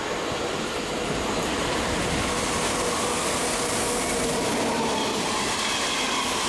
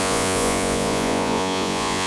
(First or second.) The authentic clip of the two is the first